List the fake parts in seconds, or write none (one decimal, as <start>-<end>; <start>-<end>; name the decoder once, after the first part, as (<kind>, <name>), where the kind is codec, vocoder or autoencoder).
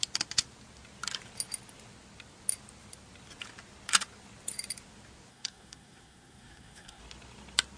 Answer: 5.3-7.0 (codec, SNAC)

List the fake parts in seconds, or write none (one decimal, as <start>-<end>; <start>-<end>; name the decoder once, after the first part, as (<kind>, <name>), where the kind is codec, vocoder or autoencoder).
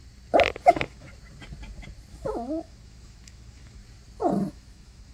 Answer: 0.7-1.1 (autoencoder, DAC-VAE); 2.1-3.8; 4.5-5.1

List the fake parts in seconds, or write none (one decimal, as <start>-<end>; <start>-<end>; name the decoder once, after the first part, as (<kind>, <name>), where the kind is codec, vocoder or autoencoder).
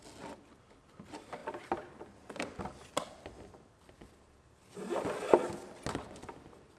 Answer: none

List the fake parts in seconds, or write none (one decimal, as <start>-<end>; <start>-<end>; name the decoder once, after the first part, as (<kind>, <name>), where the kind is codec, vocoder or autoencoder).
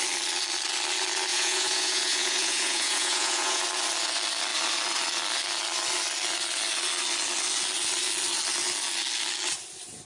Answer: 1.3-3.6 (vocoder, Vocos)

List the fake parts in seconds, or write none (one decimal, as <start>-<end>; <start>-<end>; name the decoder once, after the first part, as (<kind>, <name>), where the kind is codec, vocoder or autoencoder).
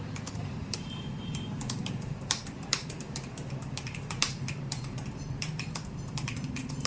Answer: 0.0-6.9 (vocoder, BigVGAN v2)